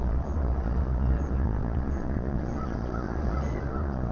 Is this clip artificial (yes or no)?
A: yes